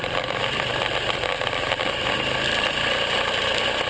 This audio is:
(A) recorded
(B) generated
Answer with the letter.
B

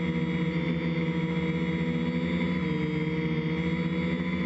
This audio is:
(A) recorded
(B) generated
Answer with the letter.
A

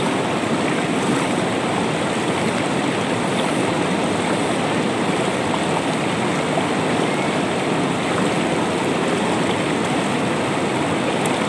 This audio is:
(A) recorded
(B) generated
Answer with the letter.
A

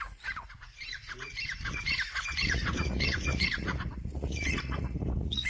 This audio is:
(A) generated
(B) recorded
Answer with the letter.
A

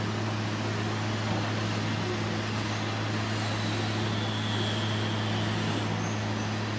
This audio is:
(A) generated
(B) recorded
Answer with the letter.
B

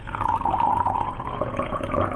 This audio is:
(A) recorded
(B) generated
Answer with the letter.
B